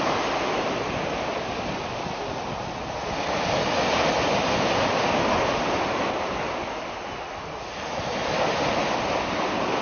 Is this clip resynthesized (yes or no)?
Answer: no